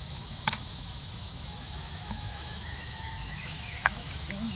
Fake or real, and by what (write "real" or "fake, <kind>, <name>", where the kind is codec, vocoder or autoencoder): fake, autoencoder, DAC-VAE